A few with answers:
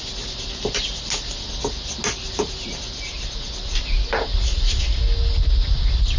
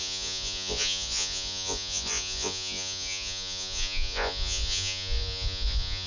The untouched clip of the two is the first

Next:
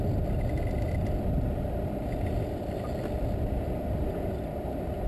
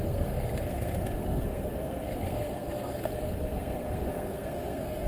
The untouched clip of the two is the first